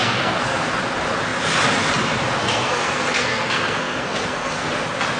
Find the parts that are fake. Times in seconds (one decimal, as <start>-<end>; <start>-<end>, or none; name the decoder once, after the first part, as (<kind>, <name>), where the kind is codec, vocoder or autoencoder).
0.0-0.8 (codec, SNAC); 2.4-4.7